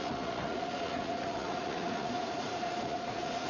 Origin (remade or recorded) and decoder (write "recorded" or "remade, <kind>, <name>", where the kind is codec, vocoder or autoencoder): remade, vocoder, Vocos